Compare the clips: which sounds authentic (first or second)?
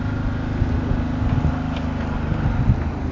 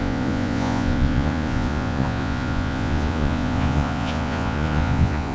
first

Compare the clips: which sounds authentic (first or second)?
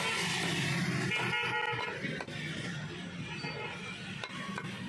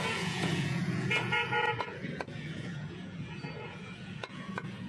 first